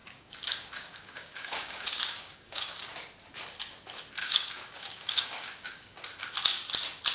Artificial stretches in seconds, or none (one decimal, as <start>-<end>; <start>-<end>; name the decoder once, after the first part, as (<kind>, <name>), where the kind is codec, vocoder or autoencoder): 0.0-3.0 (codec, DAC); 4.2-6.0